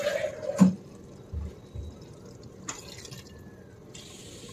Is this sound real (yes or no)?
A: yes